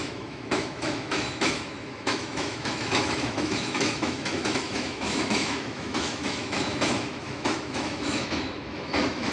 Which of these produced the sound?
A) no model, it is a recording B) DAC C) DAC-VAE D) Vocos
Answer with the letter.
C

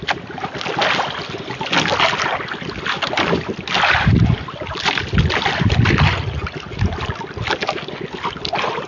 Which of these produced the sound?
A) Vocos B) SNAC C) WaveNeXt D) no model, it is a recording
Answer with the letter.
D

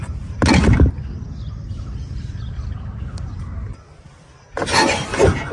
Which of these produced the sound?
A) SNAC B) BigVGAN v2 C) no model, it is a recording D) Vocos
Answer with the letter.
C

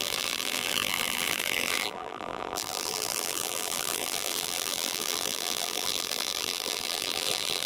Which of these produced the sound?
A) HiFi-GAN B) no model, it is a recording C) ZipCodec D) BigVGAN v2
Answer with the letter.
D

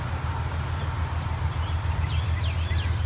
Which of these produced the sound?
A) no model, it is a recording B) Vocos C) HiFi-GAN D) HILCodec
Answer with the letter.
A